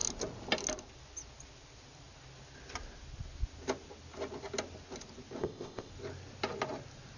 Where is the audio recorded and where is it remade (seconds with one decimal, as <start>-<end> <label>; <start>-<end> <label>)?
0.0-5.4 recorded; 5.4-5.9 remade; 5.9-7.2 recorded